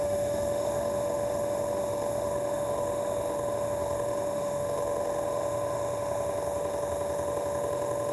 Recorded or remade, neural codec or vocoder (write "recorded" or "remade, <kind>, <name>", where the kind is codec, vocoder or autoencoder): remade, autoencoder, DAC-VAE